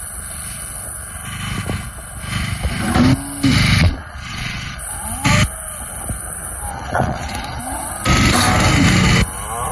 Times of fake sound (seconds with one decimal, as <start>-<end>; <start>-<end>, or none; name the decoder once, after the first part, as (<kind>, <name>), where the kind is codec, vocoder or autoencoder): 3.8-4.8 (vocoder, Vocos); 6.7-7.6